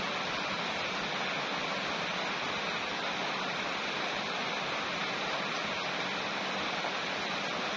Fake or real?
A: real